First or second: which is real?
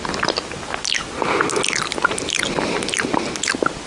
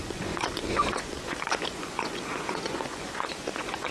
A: first